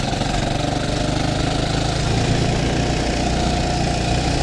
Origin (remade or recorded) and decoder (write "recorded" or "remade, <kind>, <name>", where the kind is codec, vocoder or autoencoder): recorded